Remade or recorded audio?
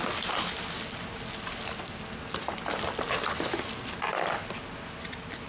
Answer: recorded